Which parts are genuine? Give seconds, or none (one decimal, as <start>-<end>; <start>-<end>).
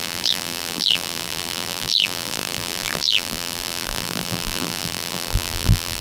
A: none